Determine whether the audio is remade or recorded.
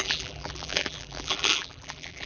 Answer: remade